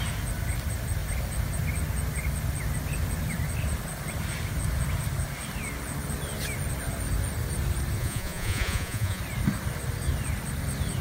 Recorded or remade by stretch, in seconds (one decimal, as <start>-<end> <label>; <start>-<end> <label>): 0.0-8.0 recorded; 8.0-9.2 remade; 9.2-11.0 recorded